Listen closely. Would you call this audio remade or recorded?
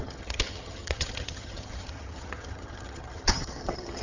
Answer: remade